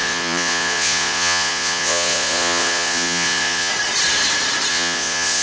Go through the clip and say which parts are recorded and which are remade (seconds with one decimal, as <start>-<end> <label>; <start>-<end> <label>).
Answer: 0.0-3.7 remade; 3.7-4.7 recorded; 4.7-5.4 remade

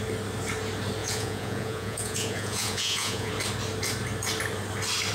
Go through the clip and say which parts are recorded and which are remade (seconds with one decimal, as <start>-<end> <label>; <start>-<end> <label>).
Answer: 0.0-1.0 recorded; 1.0-3.3 remade; 3.3-5.1 recorded

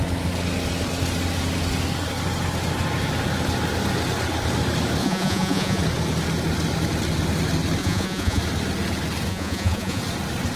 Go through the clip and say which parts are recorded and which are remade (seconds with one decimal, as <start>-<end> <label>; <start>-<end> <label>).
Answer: 0.0-5.0 recorded; 5.0-5.8 remade; 5.8-7.8 recorded; 7.8-8.4 remade; 8.4-9.3 recorded; 9.3-10.0 remade; 10.0-10.6 recorded

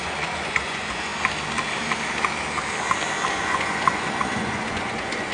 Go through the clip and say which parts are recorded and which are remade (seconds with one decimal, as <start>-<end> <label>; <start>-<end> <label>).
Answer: 0.0-1.1 remade; 1.1-3.3 recorded; 3.3-5.3 remade